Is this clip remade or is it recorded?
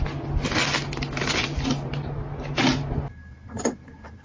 recorded